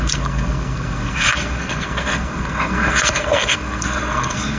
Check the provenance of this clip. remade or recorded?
remade